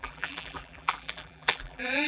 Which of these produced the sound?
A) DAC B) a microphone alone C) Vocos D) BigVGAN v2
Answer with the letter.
D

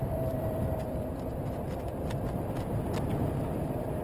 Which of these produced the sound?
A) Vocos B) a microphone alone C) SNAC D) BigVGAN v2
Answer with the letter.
D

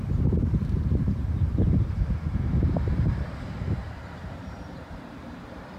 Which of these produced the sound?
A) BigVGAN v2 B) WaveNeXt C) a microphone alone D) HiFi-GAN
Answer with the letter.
A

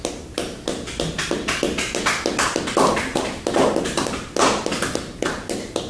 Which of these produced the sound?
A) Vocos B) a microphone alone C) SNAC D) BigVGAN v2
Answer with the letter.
B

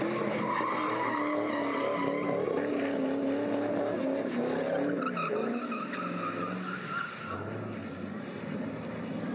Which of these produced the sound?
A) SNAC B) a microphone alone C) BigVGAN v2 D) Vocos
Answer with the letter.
B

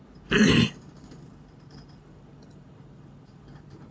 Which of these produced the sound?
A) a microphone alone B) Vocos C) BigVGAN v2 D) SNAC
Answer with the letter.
C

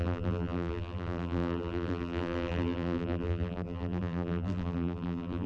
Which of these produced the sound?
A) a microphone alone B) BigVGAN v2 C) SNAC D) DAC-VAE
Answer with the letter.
B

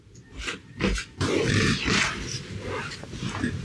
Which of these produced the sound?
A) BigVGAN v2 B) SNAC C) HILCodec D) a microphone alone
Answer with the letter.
D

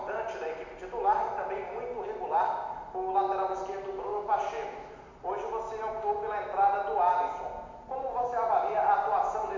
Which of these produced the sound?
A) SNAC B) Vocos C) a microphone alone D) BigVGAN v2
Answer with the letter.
C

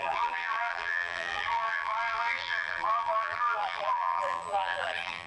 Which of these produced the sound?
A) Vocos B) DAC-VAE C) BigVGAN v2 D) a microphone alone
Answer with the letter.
C